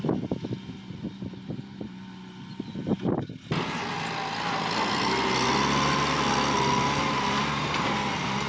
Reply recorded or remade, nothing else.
recorded